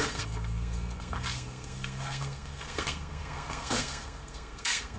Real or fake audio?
fake